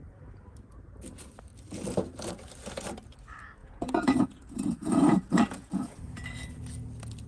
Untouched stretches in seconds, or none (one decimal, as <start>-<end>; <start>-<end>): 0.0-3.6; 6.0-7.3